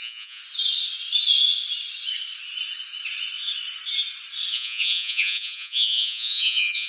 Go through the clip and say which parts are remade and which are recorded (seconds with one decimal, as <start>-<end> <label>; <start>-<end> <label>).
0.0-0.4 remade; 0.4-4.5 recorded; 4.5-6.9 remade

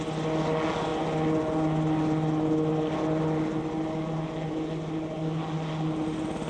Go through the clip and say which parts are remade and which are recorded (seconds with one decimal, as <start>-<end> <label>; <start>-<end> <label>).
0.0-6.5 recorded

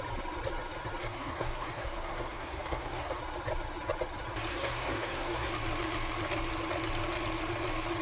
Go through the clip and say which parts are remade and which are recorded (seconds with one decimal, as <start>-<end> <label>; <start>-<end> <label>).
0.0-1.0 recorded; 1.0-3.2 remade; 3.2-4.5 recorded; 4.5-5.5 remade; 5.5-8.0 recorded

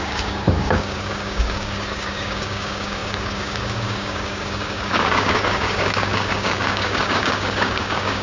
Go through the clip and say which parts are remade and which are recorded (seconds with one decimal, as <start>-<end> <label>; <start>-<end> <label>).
0.0-8.2 remade